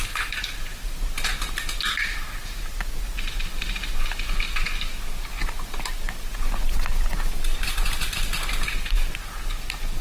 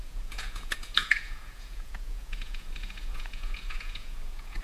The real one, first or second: first